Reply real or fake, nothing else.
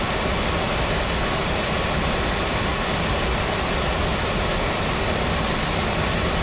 real